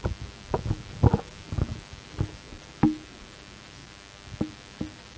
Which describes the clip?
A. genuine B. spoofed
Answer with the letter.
A